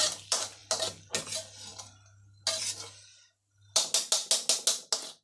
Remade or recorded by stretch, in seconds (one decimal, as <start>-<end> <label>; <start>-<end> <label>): 0.0-5.2 recorded